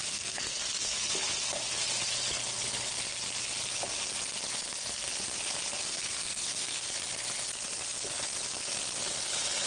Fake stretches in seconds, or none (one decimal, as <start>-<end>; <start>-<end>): 0.0-1.1; 5.9-6.9